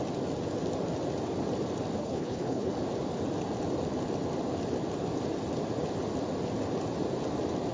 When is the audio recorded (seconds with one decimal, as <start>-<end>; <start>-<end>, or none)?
0.0-2.0; 2.7-7.7